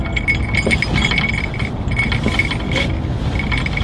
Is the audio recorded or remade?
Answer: recorded